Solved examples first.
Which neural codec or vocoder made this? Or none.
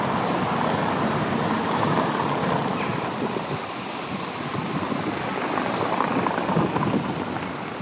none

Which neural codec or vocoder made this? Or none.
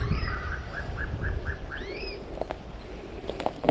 vocoder, BigVGAN v2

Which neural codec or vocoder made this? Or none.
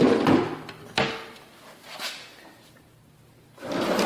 none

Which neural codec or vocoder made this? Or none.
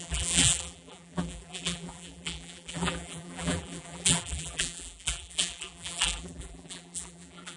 vocoder, BigVGAN v2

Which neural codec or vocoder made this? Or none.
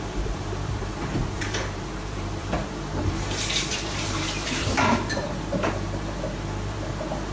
vocoder, BigVGAN v2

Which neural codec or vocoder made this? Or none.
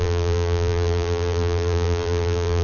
vocoder, BigVGAN v2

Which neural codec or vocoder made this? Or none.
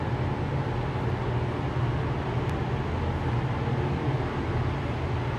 none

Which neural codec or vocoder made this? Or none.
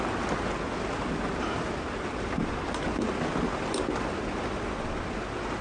none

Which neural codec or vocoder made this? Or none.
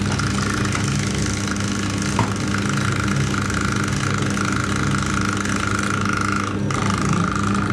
none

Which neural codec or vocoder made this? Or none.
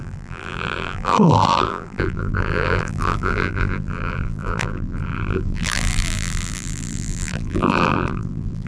vocoder, BigVGAN v2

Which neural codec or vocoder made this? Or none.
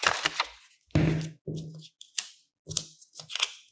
none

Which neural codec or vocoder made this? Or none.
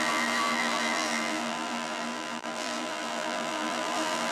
vocoder, BigVGAN v2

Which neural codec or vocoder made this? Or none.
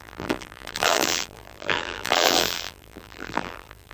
vocoder, BigVGAN v2